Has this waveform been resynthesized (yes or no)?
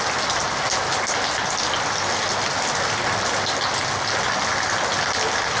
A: no